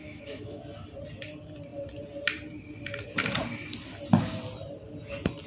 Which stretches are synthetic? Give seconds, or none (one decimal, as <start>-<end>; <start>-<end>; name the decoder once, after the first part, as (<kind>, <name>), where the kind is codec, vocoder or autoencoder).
0.0-0.6 (autoencoder, DAC-VAE)